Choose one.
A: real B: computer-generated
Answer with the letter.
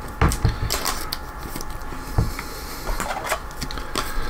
A